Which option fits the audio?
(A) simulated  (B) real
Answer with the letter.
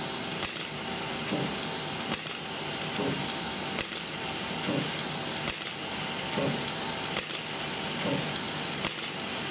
B